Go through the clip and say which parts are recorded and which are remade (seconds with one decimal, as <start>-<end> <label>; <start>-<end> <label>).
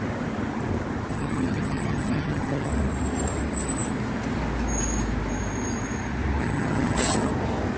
0.0-1.1 recorded; 1.1-2.7 remade; 2.7-6.4 recorded; 6.4-7.3 remade; 7.3-7.8 recorded